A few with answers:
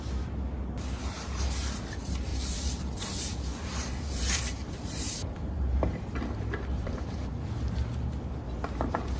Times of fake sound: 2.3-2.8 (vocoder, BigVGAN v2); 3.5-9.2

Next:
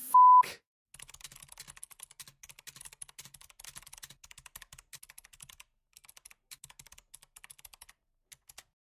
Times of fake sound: 0.0-0.8 (autoencoder, DAC-VAE)